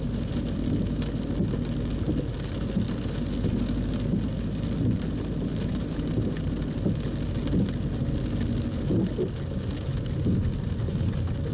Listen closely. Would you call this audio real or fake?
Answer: real